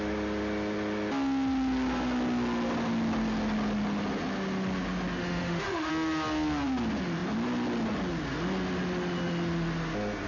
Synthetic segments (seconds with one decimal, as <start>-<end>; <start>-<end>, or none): 5.2-5.9